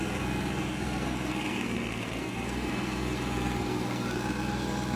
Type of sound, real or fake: fake